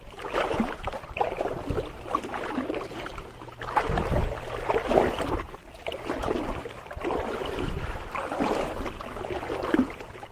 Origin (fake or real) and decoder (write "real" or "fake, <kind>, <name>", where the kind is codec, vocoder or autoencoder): real